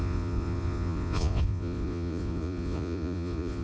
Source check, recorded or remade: remade